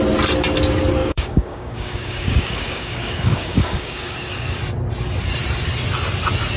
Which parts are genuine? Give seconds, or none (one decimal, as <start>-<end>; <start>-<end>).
0.0-1.0; 4.6-6.6